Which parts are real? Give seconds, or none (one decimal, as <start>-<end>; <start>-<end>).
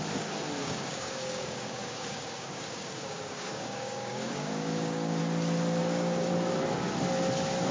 0.0-0.6; 5.2-5.8; 6.3-7.7